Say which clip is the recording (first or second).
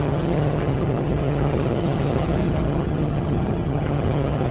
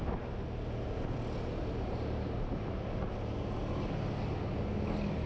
second